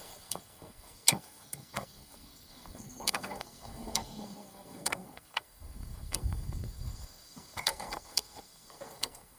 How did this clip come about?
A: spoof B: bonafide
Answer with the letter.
A